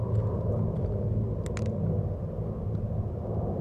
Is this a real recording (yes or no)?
yes